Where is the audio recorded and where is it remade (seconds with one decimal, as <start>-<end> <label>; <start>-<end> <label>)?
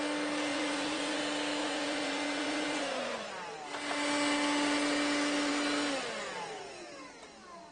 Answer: 0.0-0.5 recorded; 0.5-1.2 remade; 1.2-1.6 recorded; 1.6-3.3 remade; 3.3-7.7 recorded